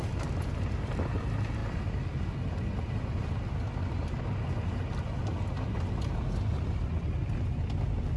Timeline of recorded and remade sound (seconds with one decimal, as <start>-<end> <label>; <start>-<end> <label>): 0.0-8.2 recorded

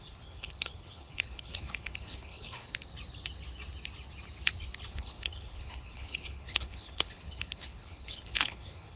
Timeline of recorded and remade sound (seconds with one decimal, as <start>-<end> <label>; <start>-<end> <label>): 0.0-2.7 remade; 2.7-4.9 recorded; 4.9-9.0 remade

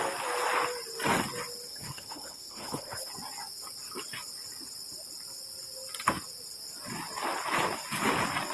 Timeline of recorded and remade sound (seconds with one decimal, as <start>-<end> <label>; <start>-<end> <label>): 0.0-1.7 recorded; 1.7-3.1 remade; 3.1-8.5 recorded

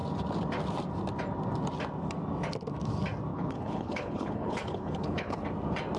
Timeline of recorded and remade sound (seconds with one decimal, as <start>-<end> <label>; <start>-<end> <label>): 0.0-3.3 recorded; 3.3-5.4 remade; 5.4-6.0 recorded

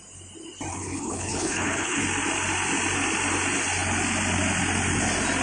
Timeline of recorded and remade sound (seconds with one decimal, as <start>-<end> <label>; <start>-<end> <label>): 0.0-0.7 recorded; 0.7-2.0 remade; 2.0-5.4 recorded